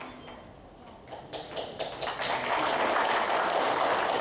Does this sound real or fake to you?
real